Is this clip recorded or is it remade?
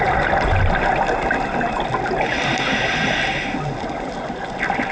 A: recorded